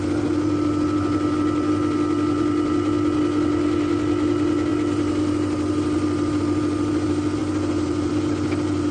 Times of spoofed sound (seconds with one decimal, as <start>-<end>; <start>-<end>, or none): none